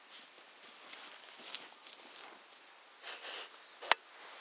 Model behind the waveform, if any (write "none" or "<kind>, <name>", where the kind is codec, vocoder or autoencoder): none